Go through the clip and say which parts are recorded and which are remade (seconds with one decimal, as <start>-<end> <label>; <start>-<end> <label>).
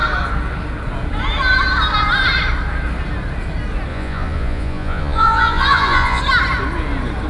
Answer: 0.0-3.9 recorded; 3.9-6.2 remade; 6.2-7.3 recorded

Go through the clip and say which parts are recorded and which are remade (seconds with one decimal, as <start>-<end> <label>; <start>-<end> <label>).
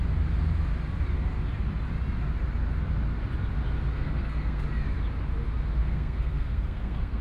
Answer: 0.0-3.9 recorded; 3.9-4.6 remade; 4.6-5.8 recorded; 5.8-7.2 remade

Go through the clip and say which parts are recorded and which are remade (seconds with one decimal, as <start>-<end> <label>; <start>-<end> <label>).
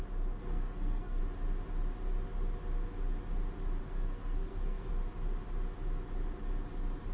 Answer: 0.0-0.4 recorded; 0.4-1.2 remade; 1.2-3.8 recorded; 3.8-4.9 remade; 4.9-7.1 recorded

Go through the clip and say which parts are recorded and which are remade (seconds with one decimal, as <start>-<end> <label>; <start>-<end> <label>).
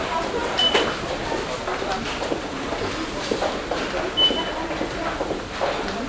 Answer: 0.0-6.1 recorded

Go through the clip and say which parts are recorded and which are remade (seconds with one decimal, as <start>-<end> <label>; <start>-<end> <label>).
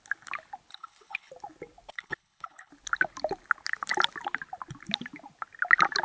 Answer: 0.0-0.7 recorded; 0.7-1.3 remade; 1.3-1.9 recorded; 1.9-2.7 remade; 2.7-6.0 recorded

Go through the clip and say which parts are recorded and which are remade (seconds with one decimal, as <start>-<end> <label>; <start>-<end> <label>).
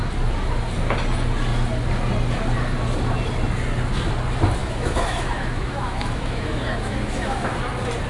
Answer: 0.0-4.6 recorded; 4.6-7.5 remade; 7.5-8.1 recorded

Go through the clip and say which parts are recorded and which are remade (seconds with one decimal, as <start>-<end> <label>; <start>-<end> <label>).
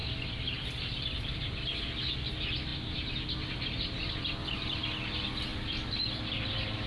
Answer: 0.0-1.8 remade; 1.8-5.5 recorded; 5.5-6.9 remade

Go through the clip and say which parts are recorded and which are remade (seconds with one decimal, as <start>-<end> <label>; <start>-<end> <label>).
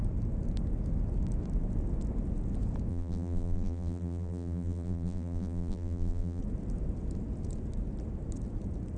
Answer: 0.0-2.9 recorded; 2.9-6.4 remade; 6.4-9.0 recorded